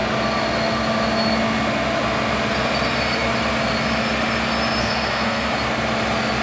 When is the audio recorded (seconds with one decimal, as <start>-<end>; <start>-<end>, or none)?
0.0-4.8; 5.5-6.4

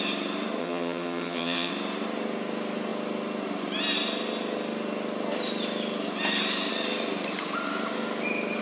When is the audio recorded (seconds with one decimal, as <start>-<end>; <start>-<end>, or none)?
0.0-0.6; 1.7-8.6

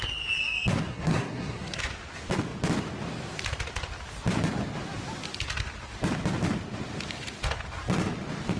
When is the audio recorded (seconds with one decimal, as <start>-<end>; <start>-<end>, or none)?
0.0-0.9; 1.8-8.6

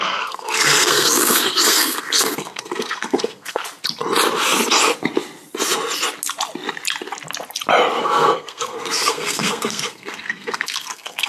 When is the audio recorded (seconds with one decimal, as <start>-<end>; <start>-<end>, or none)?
3.6-8.0

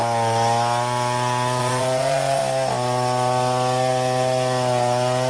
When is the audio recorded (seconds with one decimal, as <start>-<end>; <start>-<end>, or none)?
0.0-1.6; 2.4-5.3

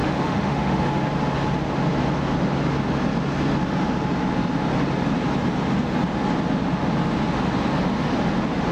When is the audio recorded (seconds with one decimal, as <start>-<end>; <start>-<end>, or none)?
0.8-8.7

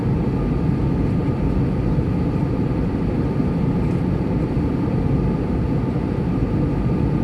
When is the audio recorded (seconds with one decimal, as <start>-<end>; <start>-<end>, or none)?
0.0-1.2; 5.5-7.2